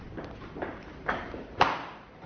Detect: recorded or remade recorded